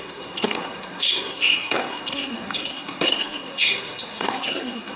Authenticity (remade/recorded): remade